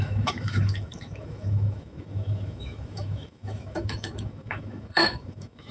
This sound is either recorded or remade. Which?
remade